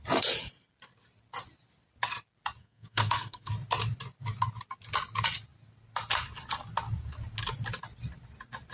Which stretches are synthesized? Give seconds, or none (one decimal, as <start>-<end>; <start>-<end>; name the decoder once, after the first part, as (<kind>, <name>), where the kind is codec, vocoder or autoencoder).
2.6-3.5 (codec, SNAC)